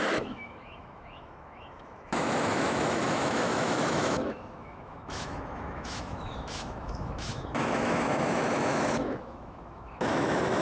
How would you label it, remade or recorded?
remade